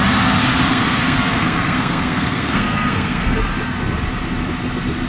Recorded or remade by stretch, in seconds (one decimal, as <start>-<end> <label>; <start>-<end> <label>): 0.0-0.7 recorded; 0.7-3.4 remade; 3.4-5.1 recorded